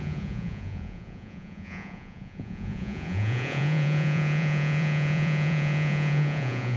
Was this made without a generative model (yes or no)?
no